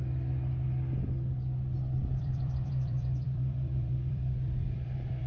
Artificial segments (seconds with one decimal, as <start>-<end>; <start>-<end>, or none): 2.0-5.3